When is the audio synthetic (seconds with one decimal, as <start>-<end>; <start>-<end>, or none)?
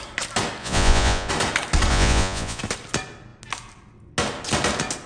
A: 0.6-1.3; 1.9-2.6